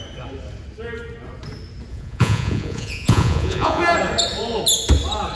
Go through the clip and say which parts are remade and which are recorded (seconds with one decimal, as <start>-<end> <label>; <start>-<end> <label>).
0.0-1.9 recorded; 1.9-3.8 remade; 3.8-5.3 recorded